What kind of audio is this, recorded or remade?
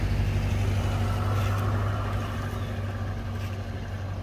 recorded